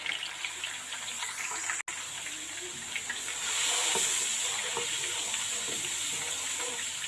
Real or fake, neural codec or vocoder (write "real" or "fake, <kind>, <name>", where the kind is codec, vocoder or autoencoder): real